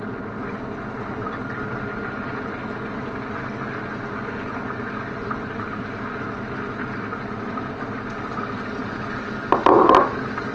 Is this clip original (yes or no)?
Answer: yes